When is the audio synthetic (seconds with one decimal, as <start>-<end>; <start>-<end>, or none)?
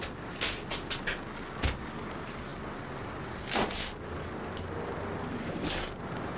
none